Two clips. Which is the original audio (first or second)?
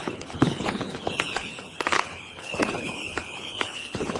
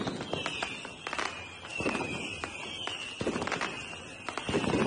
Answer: second